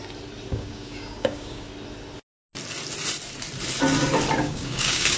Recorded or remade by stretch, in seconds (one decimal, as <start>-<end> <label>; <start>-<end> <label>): 0.0-0.5 recorded; 0.5-1.7 remade; 1.7-4.4 recorded; 4.4-5.2 remade